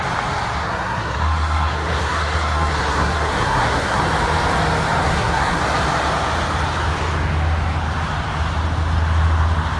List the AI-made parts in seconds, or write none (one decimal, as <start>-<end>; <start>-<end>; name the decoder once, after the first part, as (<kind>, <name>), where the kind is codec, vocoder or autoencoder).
0.6-4.0 (codec, SNAC); 5.0-5.6